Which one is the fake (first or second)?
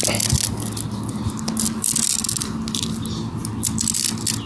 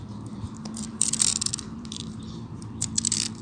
second